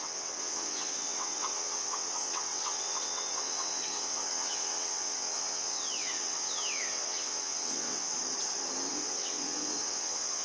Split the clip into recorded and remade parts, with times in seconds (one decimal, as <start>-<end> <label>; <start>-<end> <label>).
0.0-8.1 remade; 8.1-8.9 recorded; 8.9-10.4 remade